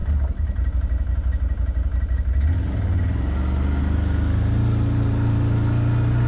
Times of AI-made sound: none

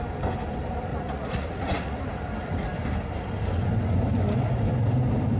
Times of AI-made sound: 0.9-2.0 (vocoder, Vocos)

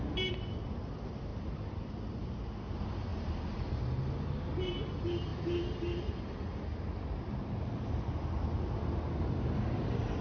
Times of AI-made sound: none